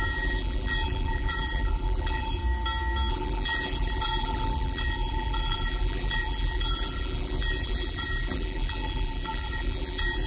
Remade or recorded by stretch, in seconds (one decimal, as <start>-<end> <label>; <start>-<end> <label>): 0.0-2.4 remade; 2.4-3.1 recorded; 3.1-10.3 remade